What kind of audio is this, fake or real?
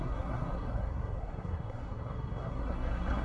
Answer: fake